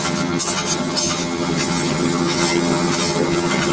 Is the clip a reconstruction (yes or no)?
yes